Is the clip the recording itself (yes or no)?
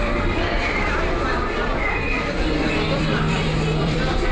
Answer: no